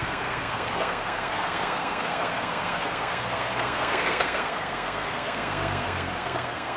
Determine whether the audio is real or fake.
fake